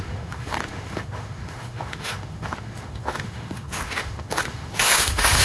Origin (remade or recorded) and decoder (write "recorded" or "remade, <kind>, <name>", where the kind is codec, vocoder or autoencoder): remade, autoencoder, DAC-VAE